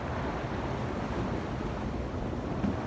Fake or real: real